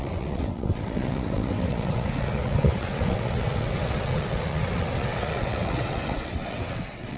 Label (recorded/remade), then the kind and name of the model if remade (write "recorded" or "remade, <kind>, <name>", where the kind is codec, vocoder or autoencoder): remade, vocoder, WaveNeXt